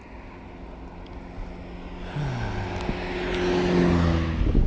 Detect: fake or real real